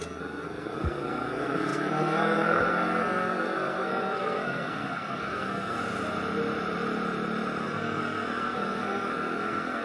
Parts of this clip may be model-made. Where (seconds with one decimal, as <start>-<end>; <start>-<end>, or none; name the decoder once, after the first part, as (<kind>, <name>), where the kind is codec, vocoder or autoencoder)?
0.0-5.8 (codec, SNAC); 7.6-9.8

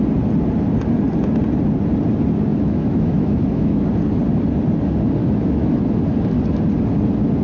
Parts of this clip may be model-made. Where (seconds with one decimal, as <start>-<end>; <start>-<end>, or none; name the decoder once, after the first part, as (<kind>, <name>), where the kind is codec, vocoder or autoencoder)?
2.5-3.8 (autoencoder, DAC-VAE); 5.2-5.8

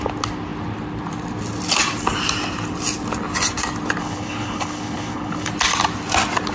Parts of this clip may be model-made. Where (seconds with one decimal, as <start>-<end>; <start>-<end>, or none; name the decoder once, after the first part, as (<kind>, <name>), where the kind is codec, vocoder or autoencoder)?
4.0-5.5 (codec, HILCodec)

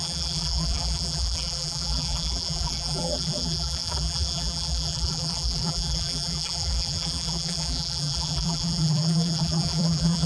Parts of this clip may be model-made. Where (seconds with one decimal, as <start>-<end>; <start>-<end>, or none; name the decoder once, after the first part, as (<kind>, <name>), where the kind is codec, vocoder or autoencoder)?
0.0-10.3 (vocoder, BigVGAN v2)